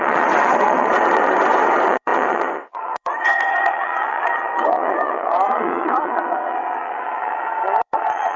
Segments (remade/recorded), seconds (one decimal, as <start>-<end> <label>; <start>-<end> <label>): 0.0-8.4 remade

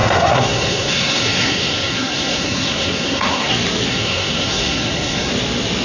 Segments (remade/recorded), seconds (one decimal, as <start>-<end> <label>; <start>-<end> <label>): 0.0-3.5 remade; 3.5-3.9 recorded; 3.9-5.3 remade; 5.3-5.8 recorded

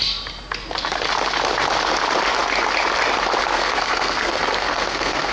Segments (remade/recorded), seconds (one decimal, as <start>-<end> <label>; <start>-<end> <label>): 0.0-3.4 recorded; 3.4-5.3 remade